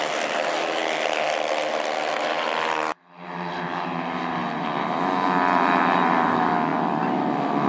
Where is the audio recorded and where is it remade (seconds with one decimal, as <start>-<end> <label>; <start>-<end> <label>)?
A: 0.0-6.7 recorded; 6.7-7.7 remade